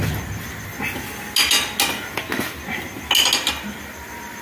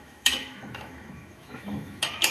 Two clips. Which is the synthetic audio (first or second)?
second